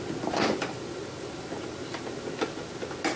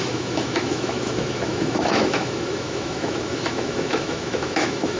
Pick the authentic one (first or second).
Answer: first